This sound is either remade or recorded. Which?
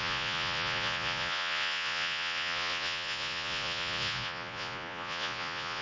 remade